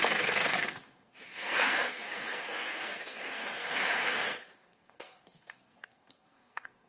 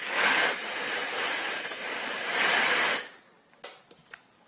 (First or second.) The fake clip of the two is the first